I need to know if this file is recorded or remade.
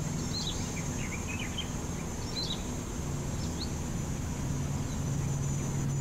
recorded